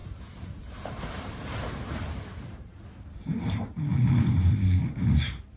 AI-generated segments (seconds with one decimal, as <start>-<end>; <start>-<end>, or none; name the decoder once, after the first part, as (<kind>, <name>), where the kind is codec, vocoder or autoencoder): 0.0-5.6 (vocoder, BigVGAN v2)